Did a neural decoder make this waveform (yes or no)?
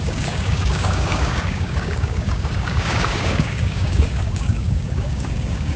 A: yes